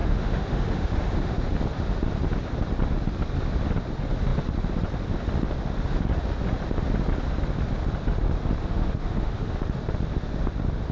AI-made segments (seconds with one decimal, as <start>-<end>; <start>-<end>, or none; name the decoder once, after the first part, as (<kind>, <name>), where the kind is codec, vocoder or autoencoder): 0.0-1.4 (autoencoder, DAC-VAE); 8.6-9.5